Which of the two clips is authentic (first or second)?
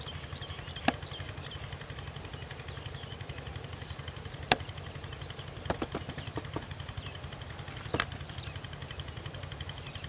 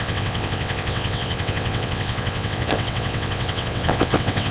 first